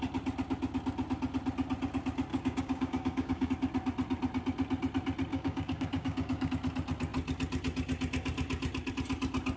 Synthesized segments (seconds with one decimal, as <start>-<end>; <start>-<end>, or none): 2.3-3.5; 5.3-6.5